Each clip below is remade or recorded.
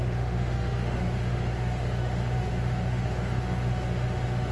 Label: remade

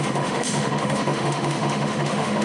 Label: remade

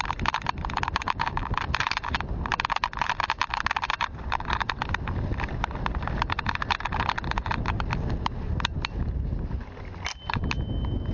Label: recorded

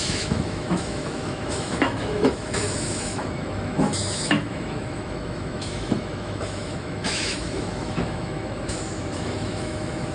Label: remade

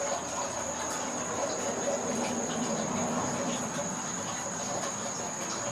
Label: recorded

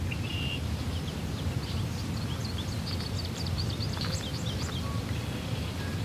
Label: recorded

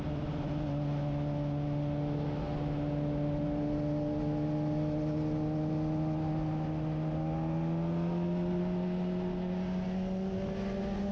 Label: recorded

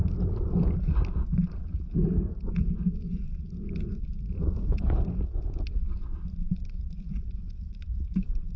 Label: recorded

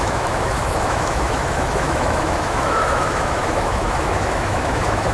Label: remade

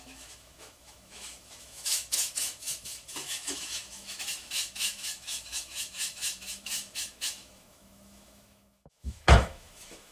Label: remade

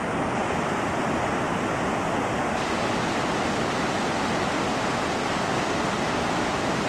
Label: recorded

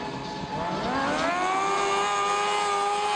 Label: recorded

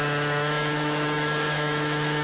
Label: remade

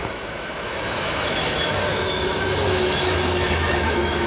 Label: remade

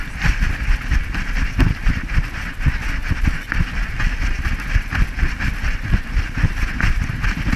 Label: recorded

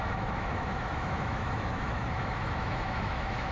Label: remade